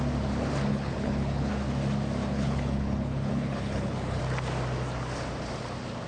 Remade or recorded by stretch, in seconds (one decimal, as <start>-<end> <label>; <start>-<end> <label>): 0.0-0.7 recorded; 0.7-1.5 remade; 1.5-2.3 recorded; 2.3-4.2 remade; 4.2-6.1 recorded